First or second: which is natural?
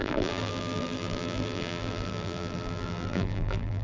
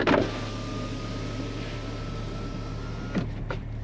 second